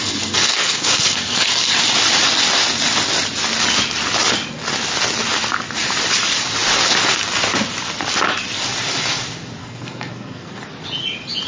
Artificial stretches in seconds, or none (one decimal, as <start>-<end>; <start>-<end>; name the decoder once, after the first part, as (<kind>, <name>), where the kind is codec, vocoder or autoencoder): 0.0-1.7 (codec, SNAC); 9.6-10.6